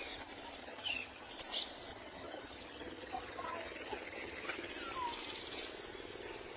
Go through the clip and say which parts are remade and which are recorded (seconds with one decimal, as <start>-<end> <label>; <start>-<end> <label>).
0.0-0.6 recorded; 0.6-1.3 remade; 1.3-1.9 recorded; 1.9-4.7 remade; 4.7-6.6 recorded